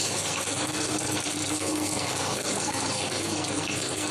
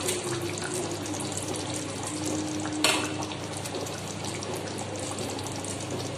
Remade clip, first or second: first